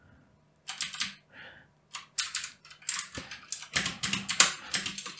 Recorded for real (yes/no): yes